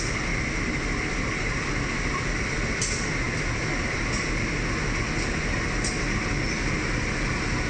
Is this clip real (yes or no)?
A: yes